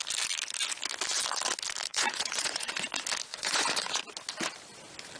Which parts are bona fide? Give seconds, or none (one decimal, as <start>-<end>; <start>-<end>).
0.0-1.9; 2.7-3.3; 4.0-5.2